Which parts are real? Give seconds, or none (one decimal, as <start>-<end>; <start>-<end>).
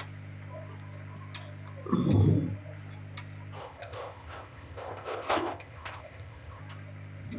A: 0.0-3.6; 6.6-7.4